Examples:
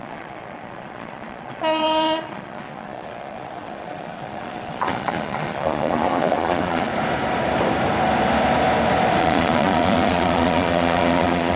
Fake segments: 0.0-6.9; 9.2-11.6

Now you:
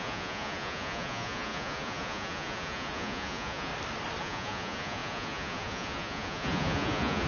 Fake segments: 0.0-3.7; 4.2-7.3

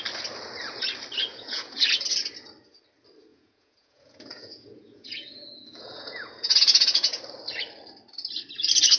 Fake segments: 1.3-2.0; 3.3-7.2

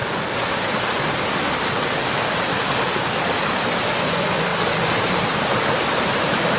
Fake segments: 4.0-4.5